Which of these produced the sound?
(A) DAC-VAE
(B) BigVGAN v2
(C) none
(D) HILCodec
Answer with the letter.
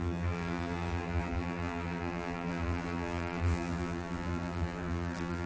B